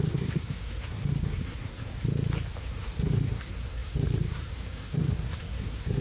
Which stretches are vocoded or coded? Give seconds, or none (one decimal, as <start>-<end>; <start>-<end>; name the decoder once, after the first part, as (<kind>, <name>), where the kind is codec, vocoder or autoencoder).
0.0-1.9 (codec, SNAC); 2.6-6.0